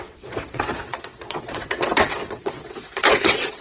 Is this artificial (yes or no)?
yes